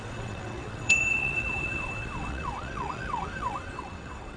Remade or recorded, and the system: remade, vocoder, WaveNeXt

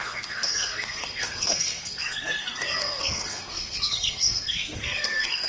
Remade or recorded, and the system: remade, codec, SNAC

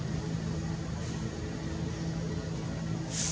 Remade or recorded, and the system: recorded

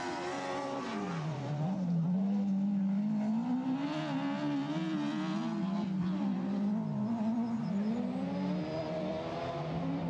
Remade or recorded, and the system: recorded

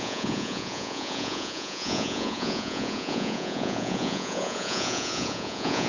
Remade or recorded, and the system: remade, vocoder, Vocos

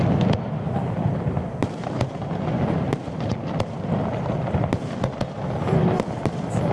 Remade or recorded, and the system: recorded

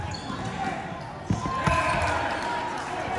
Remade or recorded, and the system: recorded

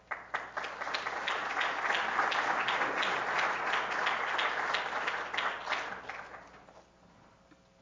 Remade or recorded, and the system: recorded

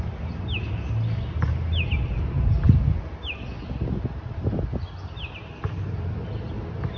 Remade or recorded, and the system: recorded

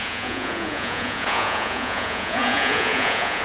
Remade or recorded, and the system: remade, vocoder, Vocos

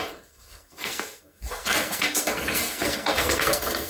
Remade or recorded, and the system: remade, codec, SNAC